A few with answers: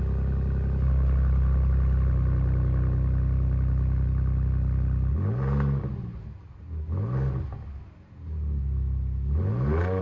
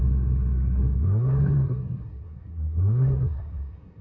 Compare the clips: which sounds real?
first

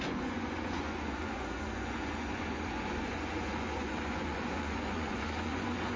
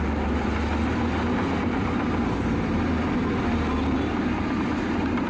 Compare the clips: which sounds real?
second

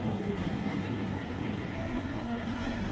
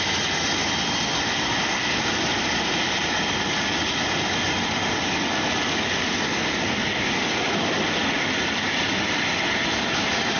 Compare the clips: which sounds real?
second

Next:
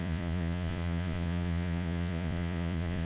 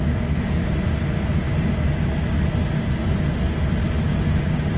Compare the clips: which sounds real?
second